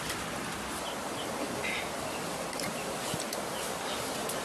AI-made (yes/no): yes